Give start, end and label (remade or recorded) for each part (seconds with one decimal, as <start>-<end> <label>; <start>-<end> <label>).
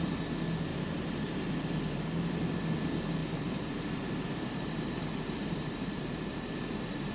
0.0-0.7 recorded; 0.7-1.4 remade; 1.4-3.2 recorded; 3.2-7.1 remade